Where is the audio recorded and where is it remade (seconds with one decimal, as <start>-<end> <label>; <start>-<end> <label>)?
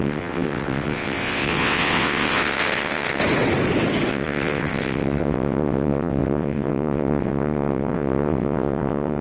0.0-3.2 remade; 3.2-4.1 recorded; 4.1-9.2 remade